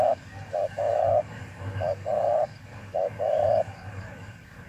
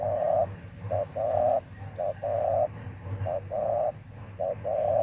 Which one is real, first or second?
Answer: second